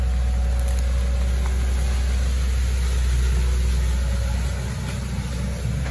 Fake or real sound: real